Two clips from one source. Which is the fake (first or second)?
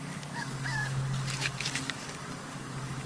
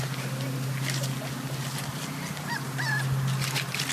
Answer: first